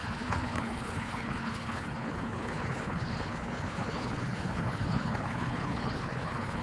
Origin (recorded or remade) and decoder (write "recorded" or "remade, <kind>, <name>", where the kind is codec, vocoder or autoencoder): remade, codec, HILCodec